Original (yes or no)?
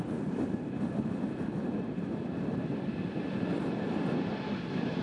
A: yes